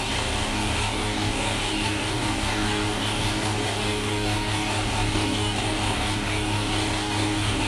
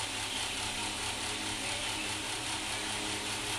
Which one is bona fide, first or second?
second